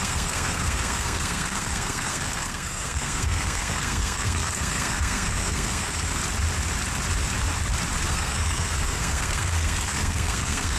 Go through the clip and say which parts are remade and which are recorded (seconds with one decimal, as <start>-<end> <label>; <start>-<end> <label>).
0.0-6.2 remade; 6.2-8.1 recorded; 8.1-10.8 remade